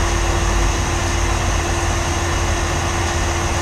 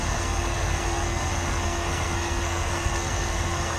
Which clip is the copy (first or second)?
second